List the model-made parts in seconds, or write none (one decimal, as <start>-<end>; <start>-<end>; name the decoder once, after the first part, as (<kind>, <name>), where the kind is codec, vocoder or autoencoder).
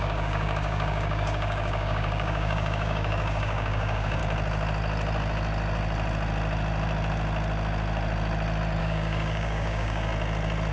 0.0-4.2 (codec, DAC); 8.8-10.1